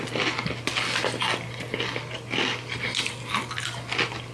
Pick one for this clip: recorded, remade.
recorded